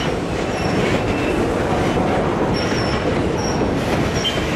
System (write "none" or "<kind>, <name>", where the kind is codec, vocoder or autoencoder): none